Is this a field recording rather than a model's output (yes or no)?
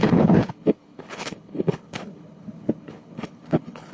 no